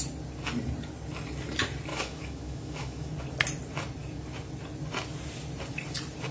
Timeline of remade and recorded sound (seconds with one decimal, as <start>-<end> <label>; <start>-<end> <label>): 0.0-1.9 recorded; 1.9-3.1 remade; 3.1-6.3 recorded